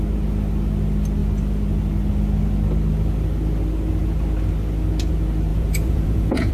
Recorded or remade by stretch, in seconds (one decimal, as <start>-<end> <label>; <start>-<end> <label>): 0.0-5.5 recorded; 5.5-6.5 remade